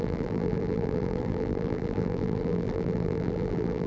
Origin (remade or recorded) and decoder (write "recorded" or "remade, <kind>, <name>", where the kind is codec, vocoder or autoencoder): remade, vocoder, BigVGAN v2